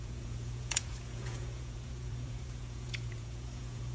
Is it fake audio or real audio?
fake